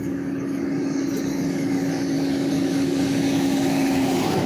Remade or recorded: remade